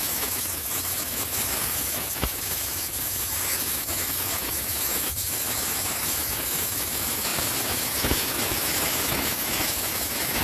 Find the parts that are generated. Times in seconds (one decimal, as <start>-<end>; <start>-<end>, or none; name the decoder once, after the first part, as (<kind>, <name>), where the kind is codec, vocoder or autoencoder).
0.0-10.4 (autoencoder, DAC-VAE)